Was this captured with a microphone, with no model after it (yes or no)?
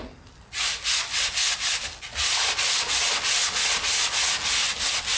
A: yes